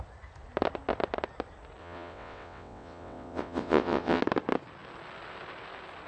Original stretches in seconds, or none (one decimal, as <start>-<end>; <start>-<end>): 0.0-1.8; 4.2-6.1